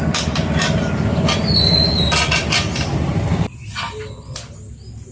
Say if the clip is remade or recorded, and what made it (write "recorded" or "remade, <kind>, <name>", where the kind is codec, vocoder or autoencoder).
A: recorded